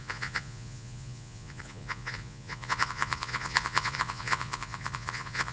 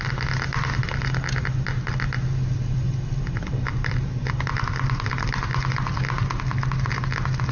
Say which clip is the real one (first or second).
second